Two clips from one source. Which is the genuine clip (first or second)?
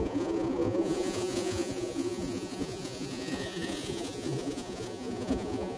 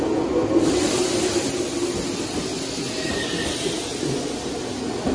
second